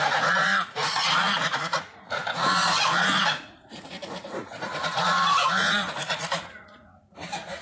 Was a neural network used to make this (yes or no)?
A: yes